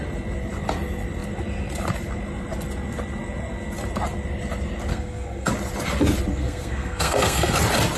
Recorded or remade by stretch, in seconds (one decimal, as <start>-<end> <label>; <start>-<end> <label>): 0.0-4.9 recorded; 4.9-5.5 remade; 5.5-6.3 recorded; 6.3-7.6 remade; 7.6-8.0 recorded